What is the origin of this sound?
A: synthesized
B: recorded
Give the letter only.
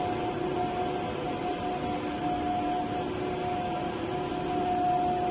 B